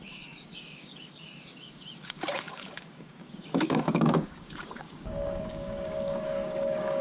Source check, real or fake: fake